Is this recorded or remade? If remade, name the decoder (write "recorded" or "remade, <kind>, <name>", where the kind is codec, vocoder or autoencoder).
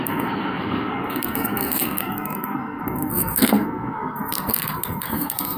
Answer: remade, codec, SNAC